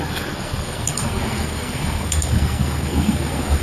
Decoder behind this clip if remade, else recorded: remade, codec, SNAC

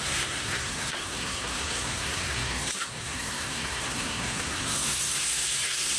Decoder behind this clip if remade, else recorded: remade, codec, SNAC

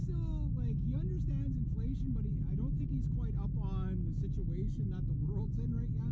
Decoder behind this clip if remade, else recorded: recorded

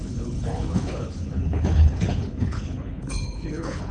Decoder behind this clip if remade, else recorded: remade, codec, HILCodec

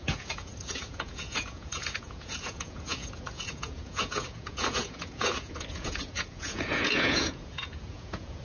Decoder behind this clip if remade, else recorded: remade, vocoder, Vocos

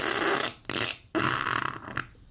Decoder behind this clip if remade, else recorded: recorded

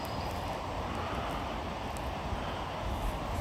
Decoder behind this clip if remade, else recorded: recorded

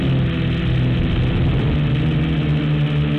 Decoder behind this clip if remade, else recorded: recorded